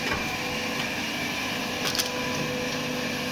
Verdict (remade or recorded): recorded